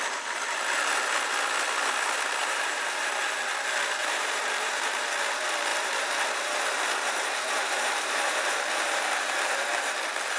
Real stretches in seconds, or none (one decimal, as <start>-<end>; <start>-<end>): 0.0-2.4; 3.1-4.0; 5.1-5.7; 10.0-10.4